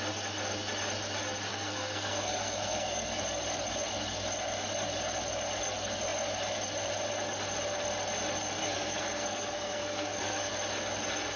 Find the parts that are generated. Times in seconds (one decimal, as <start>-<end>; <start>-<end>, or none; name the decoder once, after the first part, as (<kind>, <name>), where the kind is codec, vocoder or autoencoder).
1.5-3.2 (codec, SNAC); 8.6-10.5